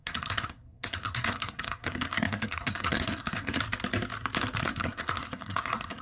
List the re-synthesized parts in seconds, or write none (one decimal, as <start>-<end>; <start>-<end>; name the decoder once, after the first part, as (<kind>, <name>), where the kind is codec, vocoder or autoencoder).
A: 0.0-3.6 (codec, SNAC); 4.6-6.0